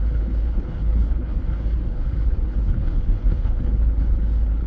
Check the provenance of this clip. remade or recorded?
remade